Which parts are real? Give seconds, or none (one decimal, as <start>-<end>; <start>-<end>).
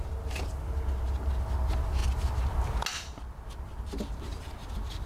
0.0-5.1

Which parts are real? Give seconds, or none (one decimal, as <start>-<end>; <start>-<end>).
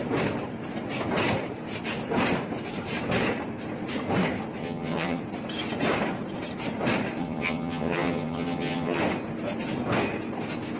0.0-4.6; 5.2-7.2; 9.0-10.8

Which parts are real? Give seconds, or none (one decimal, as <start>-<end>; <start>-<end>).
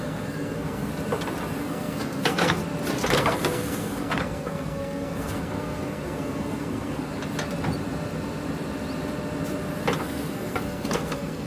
0.9-1.6; 2.6-3.1; 7.1-10.0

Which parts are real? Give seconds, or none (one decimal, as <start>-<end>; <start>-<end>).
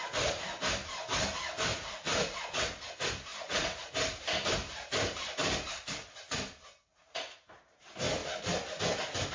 0.0-1.7; 2.7-3.3; 3.9-6.9; 7.5-9.3